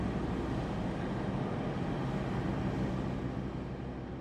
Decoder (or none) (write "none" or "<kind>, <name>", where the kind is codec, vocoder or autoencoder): none